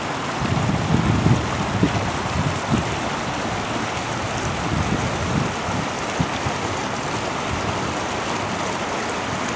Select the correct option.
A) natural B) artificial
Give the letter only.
A